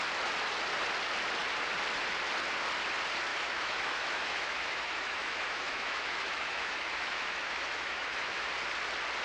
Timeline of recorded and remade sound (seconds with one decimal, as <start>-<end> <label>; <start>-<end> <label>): 0.0-3.3 recorded; 3.3-8.5 remade; 8.5-9.2 recorded